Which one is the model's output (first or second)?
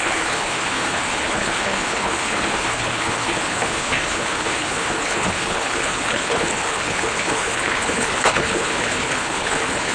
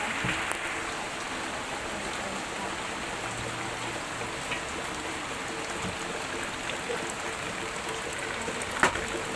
first